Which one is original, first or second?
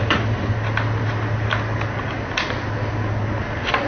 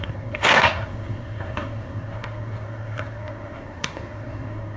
first